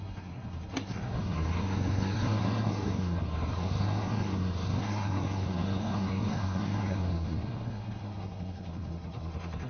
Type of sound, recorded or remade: remade